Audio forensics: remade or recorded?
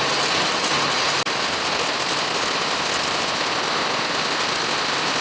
recorded